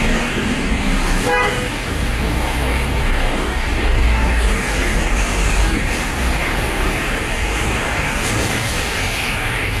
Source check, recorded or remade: remade